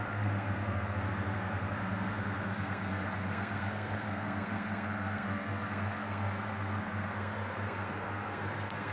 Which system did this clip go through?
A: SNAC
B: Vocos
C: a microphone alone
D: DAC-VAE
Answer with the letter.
A